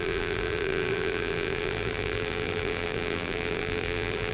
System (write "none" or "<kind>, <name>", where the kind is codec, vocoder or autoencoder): vocoder, BigVGAN v2